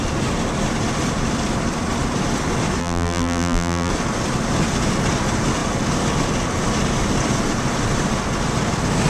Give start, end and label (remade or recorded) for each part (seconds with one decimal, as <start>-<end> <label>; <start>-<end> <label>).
0.0-2.8 recorded; 2.8-3.9 remade; 3.9-9.1 recorded